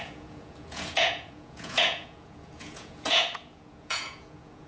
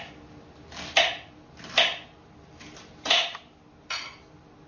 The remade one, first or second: first